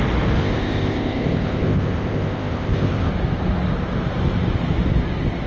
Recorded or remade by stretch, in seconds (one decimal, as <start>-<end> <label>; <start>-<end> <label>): 0.0-0.4 recorded; 0.4-3.1 remade; 3.1-5.5 recorded